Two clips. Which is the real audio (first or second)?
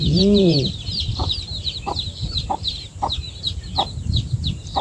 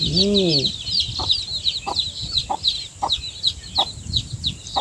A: second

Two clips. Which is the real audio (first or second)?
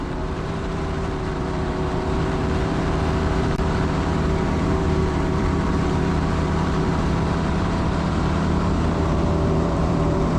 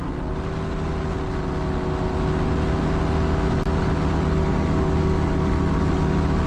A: second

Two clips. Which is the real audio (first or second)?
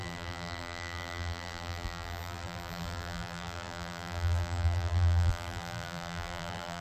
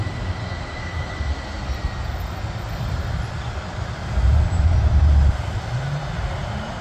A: second